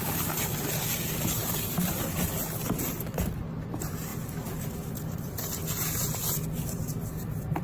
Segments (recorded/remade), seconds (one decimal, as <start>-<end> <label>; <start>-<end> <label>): 0.0-7.6 recorded